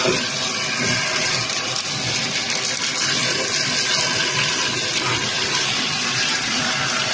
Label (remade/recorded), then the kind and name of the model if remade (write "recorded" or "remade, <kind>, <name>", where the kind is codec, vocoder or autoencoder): recorded